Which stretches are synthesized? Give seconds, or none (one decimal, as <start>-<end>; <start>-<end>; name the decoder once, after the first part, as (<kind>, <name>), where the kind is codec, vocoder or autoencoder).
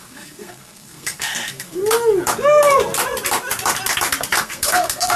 0.0-1.8 (codec, SNAC); 4.4-5.2